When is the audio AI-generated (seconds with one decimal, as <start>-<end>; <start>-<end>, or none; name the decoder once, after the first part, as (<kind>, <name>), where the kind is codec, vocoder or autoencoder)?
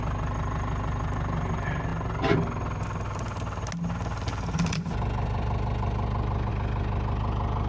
none